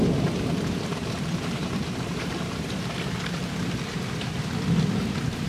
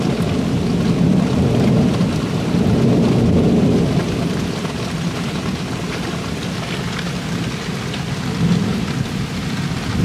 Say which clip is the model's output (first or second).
first